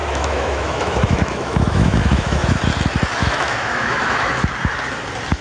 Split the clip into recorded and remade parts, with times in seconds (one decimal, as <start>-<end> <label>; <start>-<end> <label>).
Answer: 0.0-2.6 remade; 2.6-3.2 recorded; 3.2-4.3 remade; 4.3-5.4 recorded